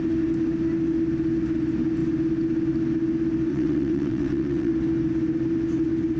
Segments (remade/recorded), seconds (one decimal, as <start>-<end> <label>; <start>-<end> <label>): 0.0-3.5 recorded; 3.5-4.7 remade; 4.7-6.2 recorded